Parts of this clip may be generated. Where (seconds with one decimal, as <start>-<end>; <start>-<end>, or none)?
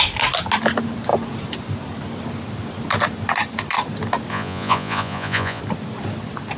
4.3-5.6